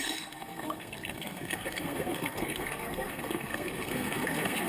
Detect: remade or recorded remade